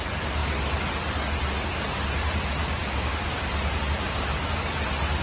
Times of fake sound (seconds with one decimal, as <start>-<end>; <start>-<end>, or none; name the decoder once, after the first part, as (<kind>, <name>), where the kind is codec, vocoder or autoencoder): 2.6-3.4 (codec, DAC)